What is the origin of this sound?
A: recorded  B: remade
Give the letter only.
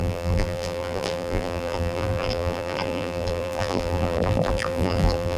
B